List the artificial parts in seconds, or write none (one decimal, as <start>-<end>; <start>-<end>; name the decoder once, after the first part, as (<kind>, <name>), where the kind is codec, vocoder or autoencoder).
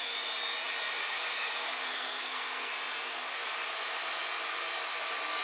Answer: 1.0-2.7 (codec, SNAC)